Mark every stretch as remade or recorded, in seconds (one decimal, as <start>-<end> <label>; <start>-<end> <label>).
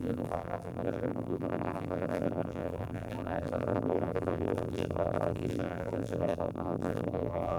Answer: 0.0-7.6 remade